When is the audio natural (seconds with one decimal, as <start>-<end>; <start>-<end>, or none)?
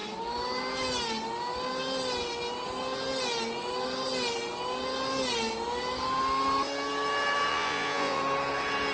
0.0-7.5; 8.2-8.9